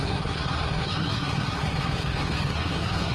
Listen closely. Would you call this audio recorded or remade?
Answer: remade